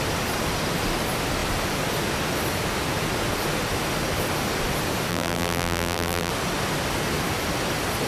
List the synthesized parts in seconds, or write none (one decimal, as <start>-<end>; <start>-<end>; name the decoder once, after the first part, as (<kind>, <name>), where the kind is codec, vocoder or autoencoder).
5.1-6.3 (vocoder, BigVGAN v2)